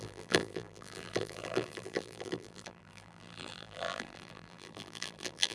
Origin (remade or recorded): remade